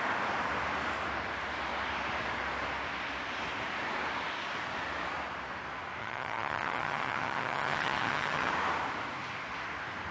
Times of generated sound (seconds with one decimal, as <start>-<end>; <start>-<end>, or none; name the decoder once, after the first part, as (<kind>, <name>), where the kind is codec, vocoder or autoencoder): 6.0-8.5 (vocoder, HiFi-GAN)